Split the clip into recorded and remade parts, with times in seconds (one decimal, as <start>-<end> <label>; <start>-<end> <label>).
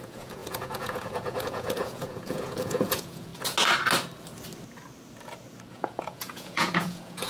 0.0-3.3 remade; 3.3-5.7 recorded; 5.7-7.3 remade